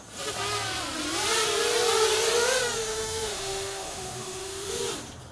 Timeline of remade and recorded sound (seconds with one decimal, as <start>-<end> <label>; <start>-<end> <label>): 0.0-2.9 recorded; 2.9-4.8 remade; 4.8-5.3 recorded